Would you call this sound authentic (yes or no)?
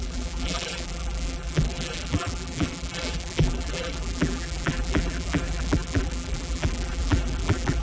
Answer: no